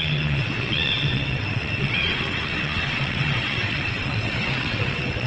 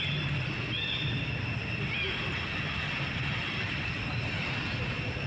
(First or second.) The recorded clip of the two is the second